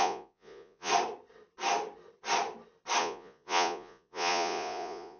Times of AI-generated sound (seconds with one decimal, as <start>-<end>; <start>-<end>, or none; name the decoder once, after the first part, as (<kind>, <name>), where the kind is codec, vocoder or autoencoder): 0.0-0.9 (vocoder, Vocos); 3.0-5.2